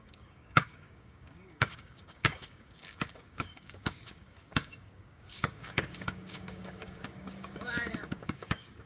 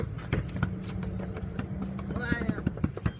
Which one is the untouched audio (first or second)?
second